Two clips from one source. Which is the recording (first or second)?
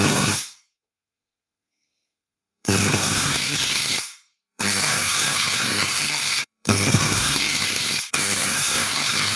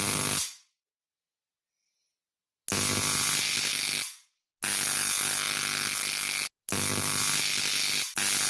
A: second